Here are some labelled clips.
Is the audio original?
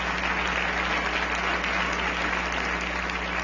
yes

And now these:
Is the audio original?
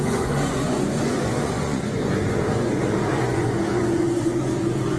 no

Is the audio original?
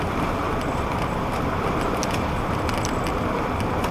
yes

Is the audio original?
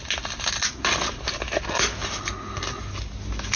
yes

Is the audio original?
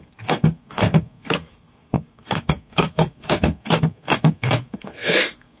no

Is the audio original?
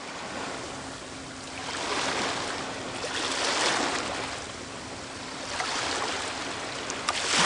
yes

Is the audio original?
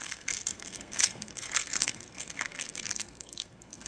no